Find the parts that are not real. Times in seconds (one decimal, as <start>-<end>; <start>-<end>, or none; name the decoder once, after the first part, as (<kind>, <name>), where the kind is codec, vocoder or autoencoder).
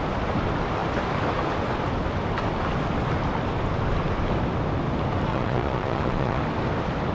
5.3-6.4 (vocoder, Vocos)